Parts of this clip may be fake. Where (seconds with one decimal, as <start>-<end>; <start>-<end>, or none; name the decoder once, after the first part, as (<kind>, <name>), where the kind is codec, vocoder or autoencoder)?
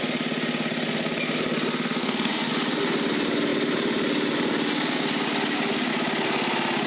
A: 2.0-2.5 (codec, SNAC)